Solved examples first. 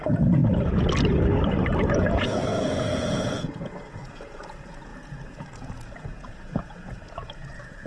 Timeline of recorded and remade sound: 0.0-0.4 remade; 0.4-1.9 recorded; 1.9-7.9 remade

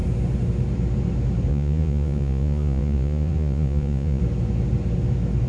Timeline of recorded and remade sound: 0.0-1.5 recorded; 1.5-4.2 remade; 4.2-5.5 recorded

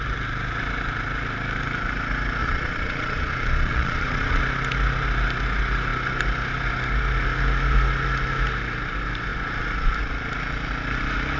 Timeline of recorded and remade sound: 0.0-2.4 recorded; 2.4-4.4 remade; 4.4-11.4 recorded

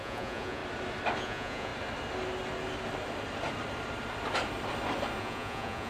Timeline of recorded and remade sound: 0.0-0.6 remade; 0.6-1.2 recorded; 1.2-1.7 remade; 1.7-5.2 recorded; 5.2-5.9 remade

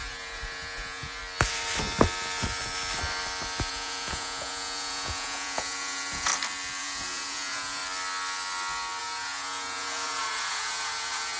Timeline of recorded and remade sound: 0.0-1.2 remade; 1.2-3.7 recorded; 3.7-6.3 remade; 6.3-6.8 recorded; 6.8-7.8 remade; 7.8-9.0 recorded; 9.0-11.4 remade

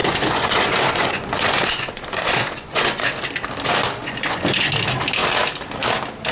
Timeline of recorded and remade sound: 0.0-3.0 remade; 3.0-4.0 recorded; 4.0-4.7 remade; 4.7-6.3 recorded

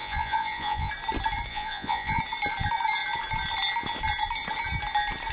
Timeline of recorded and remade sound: 0.0-0.9 remade; 0.9-1.5 recorded; 1.5-2.2 remade; 2.2-5.3 recorded

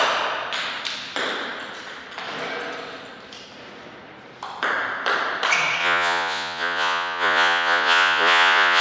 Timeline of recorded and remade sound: 0.0-5.8 recorded; 5.8-8.8 remade